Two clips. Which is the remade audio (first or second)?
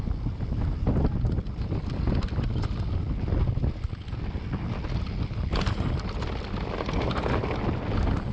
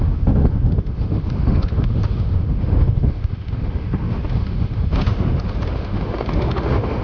second